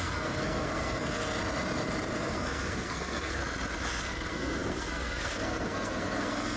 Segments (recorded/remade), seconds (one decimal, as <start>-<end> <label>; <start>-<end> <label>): 0.0-1.2 remade; 1.2-2.2 recorded; 2.2-3.4 remade; 3.4-4.0 recorded; 4.0-6.6 remade